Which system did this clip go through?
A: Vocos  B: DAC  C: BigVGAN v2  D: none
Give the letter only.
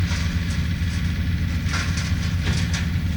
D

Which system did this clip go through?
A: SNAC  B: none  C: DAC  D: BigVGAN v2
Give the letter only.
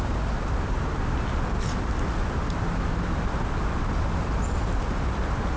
B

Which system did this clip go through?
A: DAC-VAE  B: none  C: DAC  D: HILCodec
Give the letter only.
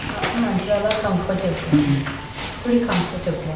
B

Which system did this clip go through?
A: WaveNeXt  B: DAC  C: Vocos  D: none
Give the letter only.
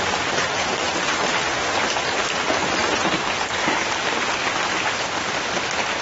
D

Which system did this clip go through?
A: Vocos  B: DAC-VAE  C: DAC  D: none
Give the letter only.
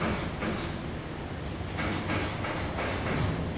D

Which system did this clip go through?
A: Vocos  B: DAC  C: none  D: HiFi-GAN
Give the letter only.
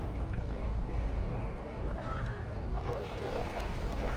B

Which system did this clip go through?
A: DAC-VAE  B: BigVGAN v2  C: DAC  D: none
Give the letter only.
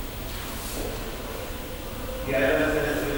D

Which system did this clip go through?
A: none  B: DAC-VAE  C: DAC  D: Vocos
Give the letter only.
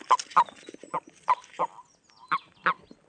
A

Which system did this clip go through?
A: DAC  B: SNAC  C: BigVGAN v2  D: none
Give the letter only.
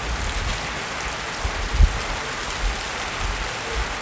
D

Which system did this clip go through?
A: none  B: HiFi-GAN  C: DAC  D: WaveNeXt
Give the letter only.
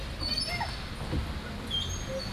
A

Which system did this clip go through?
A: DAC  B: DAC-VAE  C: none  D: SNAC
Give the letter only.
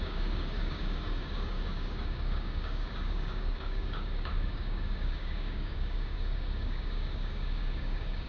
A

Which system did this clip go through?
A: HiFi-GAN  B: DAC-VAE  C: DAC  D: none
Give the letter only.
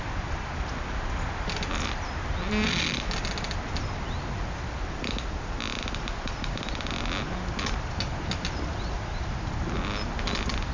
D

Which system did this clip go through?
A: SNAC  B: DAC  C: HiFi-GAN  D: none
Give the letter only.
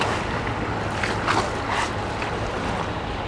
D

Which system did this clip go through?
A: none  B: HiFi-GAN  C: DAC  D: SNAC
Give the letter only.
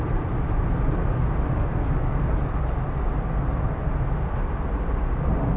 A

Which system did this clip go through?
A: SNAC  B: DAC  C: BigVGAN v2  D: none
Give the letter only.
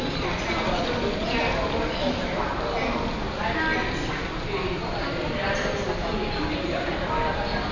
D